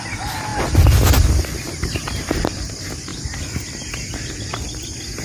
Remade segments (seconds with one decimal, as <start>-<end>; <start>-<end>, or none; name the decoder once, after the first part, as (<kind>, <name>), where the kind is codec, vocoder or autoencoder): none